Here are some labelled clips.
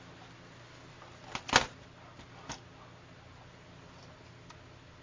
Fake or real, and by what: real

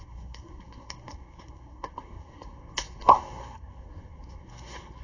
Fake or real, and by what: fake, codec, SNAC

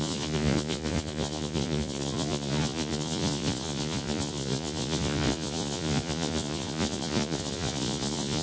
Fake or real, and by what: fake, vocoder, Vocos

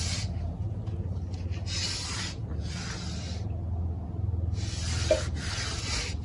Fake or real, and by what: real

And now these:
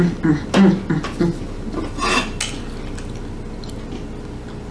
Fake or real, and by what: real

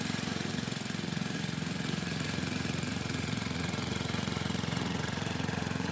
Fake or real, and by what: fake, vocoder, Vocos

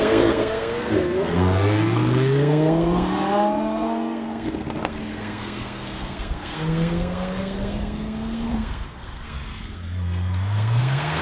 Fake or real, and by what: fake, codec, SNAC